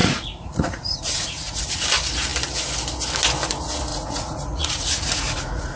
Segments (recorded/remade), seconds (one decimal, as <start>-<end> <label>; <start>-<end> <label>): 0.0-1.6 remade; 1.6-3.9 recorded; 3.9-5.8 remade